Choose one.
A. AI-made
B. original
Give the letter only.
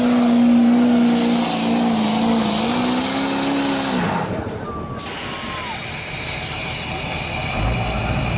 B